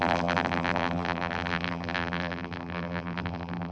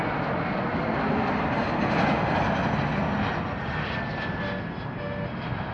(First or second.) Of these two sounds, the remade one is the first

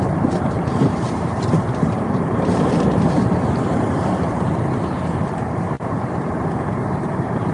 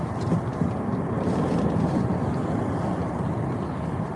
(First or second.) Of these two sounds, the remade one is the first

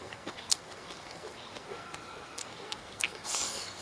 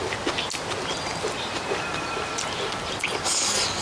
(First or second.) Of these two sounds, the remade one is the first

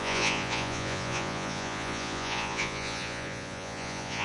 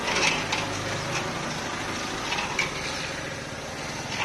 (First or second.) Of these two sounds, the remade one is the first